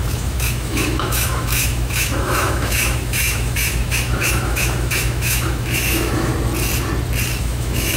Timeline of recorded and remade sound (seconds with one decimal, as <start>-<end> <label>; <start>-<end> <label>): 0.0-6.3 remade; 6.3-7.4 recorded; 7.4-8.0 remade